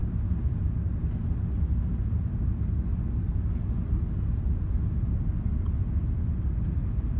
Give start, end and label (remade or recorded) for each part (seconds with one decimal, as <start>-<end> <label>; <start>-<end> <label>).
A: 0.0-7.2 recorded